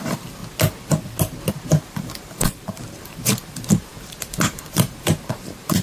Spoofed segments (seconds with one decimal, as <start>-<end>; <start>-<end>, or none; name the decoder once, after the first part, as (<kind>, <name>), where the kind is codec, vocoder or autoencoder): 0.0-0.4 (vocoder, BigVGAN v2); 1.5-5.8